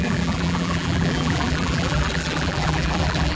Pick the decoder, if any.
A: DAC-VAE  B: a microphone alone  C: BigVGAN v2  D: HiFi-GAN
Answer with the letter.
C